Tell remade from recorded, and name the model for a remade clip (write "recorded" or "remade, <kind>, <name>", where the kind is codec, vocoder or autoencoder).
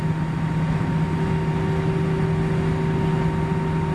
recorded